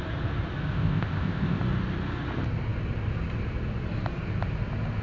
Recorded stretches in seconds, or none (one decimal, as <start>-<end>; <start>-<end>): 0.0-0.7; 1.6-5.0